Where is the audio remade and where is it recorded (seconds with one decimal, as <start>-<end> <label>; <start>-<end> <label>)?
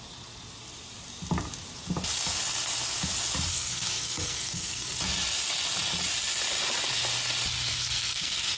0.0-3.5 recorded; 3.5-5.0 remade; 5.0-7.7 recorded; 7.7-8.6 remade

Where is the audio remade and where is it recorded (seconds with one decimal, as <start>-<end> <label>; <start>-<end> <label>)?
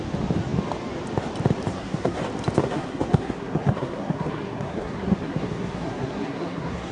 0.0-1.7 recorded; 1.7-2.2 remade; 2.2-2.6 recorded; 2.6-6.9 remade